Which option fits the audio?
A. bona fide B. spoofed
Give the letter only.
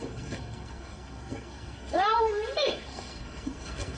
B